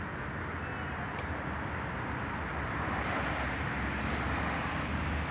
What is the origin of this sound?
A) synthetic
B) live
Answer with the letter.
B